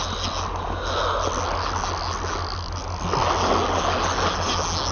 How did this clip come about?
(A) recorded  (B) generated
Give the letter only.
A